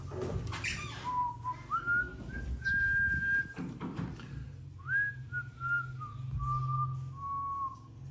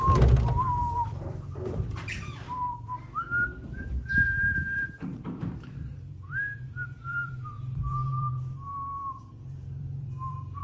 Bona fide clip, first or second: first